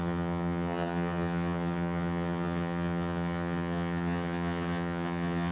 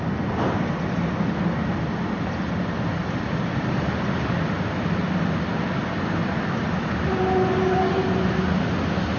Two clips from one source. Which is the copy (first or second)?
first